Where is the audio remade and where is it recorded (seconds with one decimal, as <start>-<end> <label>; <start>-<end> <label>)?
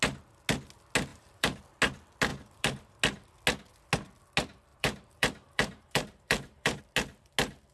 0.0-1.1 recorded; 1.1-1.6 remade; 1.6-2.3 recorded; 2.3-3.0 remade; 3.0-4.7 recorded; 4.7-6.8 remade; 6.8-7.7 recorded